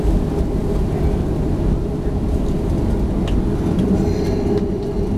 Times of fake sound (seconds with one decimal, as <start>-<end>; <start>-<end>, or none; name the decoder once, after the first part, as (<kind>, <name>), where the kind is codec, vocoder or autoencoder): none